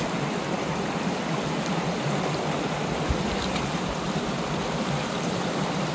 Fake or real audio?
fake